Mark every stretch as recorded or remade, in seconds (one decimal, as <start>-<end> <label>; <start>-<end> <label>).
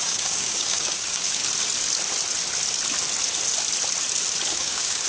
0.0-1.4 remade; 1.4-4.5 recorded; 4.5-5.1 remade